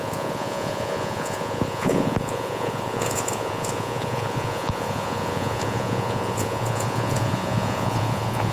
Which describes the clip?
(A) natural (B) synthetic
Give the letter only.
B